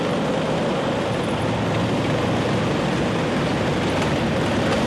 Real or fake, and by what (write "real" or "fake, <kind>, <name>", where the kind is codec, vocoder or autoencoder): real